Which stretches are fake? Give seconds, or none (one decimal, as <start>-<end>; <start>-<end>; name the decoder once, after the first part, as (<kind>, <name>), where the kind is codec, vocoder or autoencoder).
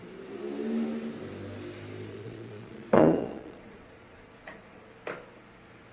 2.1-4.9 (vocoder, Vocos)